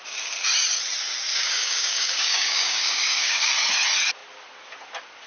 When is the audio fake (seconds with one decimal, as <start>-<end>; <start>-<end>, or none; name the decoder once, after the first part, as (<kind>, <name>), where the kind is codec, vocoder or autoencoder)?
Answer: 1.3-3.5 (codec, DAC)